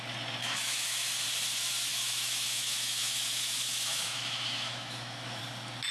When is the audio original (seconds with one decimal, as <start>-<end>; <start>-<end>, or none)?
0.0-0.4; 1.1-1.9; 5.4-5.9